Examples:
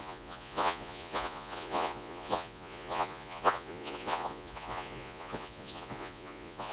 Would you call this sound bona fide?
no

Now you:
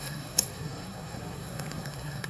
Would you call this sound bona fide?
no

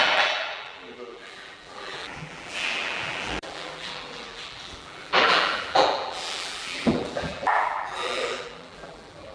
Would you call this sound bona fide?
no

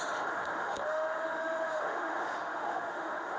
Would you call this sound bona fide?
no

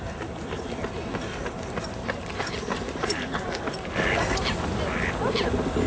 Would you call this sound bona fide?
yes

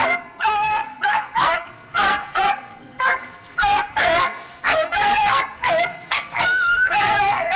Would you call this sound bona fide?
no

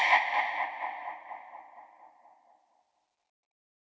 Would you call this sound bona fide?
yes